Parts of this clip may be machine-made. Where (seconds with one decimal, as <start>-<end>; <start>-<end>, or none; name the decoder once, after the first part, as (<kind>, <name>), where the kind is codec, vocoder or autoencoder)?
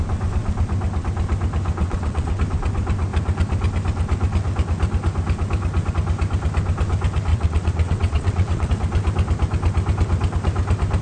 1.8-2.4 (vocoder, WaveNeXt); 7.3-8.7